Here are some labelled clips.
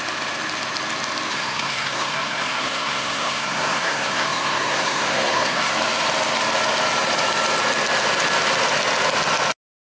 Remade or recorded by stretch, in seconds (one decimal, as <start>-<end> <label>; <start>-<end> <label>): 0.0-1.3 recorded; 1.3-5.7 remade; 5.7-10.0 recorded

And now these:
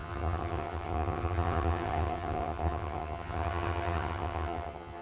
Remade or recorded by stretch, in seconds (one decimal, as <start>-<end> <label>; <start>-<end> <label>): 0.0-5.0 remade

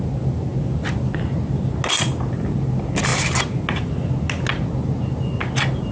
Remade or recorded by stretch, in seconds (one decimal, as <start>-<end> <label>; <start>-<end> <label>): 0.0-5.9 recorded

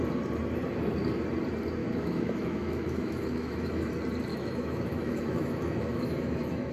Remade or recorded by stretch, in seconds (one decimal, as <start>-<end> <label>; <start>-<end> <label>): 0.0-1.8 recorded; 1.8-3.9 remade; 3.9-4.3 recorded; 4.3-6.7 remade

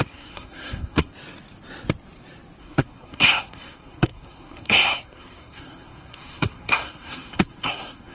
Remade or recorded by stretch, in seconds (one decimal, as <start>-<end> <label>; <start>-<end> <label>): 0.0-1.1 remade; 1.1-2.6 recorded; 2.6-8.1 remade

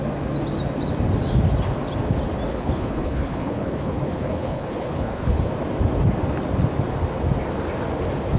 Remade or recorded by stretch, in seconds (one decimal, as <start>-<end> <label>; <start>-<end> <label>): 0.0-2.5 recorded; 2.5-5.5 remade; 5.5-8.4 recorded

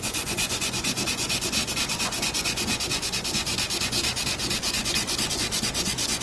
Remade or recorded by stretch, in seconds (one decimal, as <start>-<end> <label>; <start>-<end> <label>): 0.0-6.2 remade

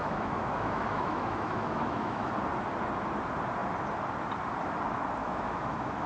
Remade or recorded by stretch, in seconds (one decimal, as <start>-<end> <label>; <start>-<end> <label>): 0.0-2.3 remade; 2.3-5.2 recorded; 5.2-6.1 remade